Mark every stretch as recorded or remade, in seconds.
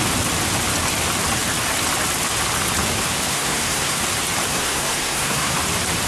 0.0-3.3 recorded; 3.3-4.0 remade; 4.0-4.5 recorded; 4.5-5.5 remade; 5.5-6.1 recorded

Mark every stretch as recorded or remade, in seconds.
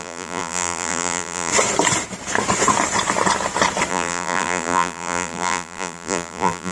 0.0-1.5 remade; 1.5-3.9 recorded; 3.9-6.7 remade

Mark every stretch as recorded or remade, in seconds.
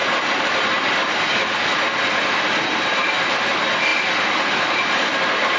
0.0-5.6 recorded